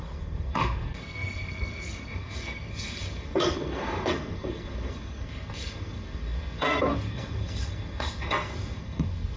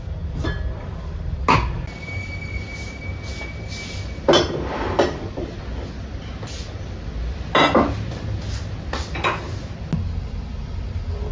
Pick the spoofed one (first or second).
first